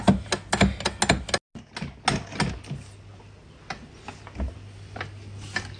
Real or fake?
real